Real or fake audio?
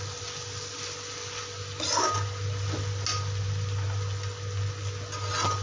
real